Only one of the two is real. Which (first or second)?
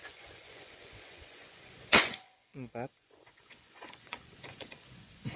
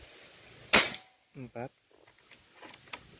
second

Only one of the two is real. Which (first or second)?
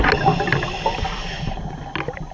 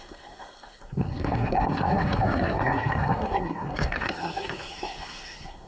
first